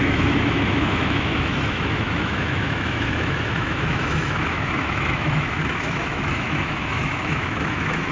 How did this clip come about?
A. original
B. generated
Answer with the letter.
B